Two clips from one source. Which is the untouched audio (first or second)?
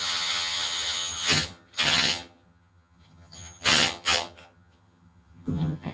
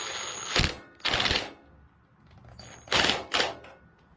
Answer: second